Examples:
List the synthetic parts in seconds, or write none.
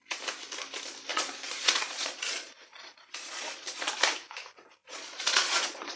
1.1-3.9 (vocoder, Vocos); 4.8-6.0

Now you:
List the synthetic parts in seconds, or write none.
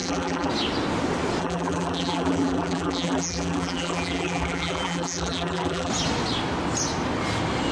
0.0-0.5 (vocoder, BigVGAN v2); 1.4-5.9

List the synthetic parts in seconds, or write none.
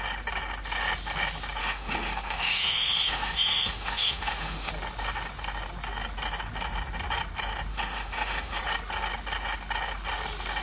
1.6-4.7 (autoencoder, DAC-VAE); 7.7-8.6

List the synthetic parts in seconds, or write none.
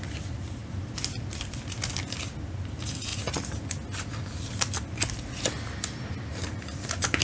none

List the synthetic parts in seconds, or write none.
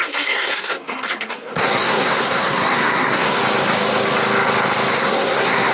0.0-3.4 (codec, SNAC); 4.9-5.7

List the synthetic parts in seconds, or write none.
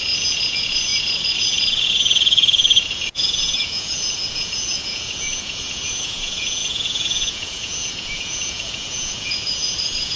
0.0-10.2 (vocoder, Vocos)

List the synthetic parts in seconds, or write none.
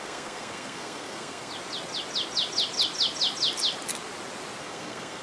0.0-1.5 (codec, SNAC); 4.6-5.2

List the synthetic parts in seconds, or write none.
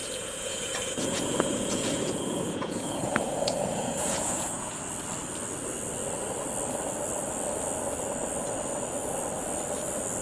0.0-4.8 (vocoder, Vocos)